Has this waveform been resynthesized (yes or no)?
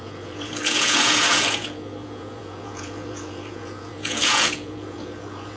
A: yes